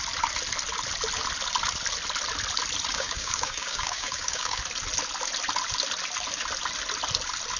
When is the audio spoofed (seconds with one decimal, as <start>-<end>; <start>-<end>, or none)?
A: 2.9-4.6